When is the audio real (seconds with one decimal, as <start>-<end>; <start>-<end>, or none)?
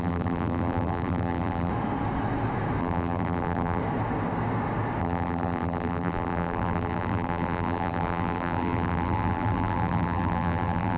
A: 1.7-2.8; 3.8-5.0